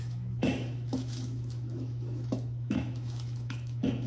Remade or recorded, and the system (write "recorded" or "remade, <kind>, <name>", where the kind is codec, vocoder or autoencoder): remade, autoencoder, DAC-VAE